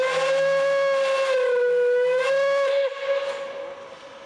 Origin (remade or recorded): recorded